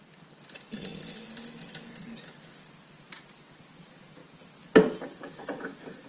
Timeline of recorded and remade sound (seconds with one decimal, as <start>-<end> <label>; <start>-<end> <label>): 0.0-6.1 recorded